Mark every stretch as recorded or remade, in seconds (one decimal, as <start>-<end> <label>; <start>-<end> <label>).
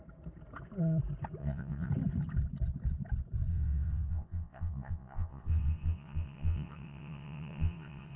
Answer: 0.0-1.4 recorded; 1.4-1.9 remade; 1.9-3.5 recorded; 3.5-8.2 remade